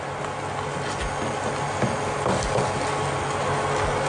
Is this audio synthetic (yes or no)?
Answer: no